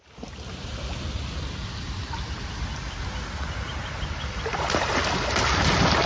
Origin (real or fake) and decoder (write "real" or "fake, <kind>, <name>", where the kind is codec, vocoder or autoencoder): real